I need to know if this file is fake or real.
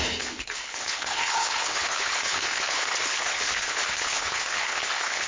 fake